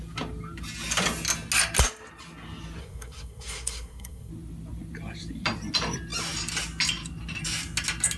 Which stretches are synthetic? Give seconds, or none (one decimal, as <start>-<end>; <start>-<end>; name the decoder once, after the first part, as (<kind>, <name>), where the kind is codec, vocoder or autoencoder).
2.8-4.3 (codec, SNAC)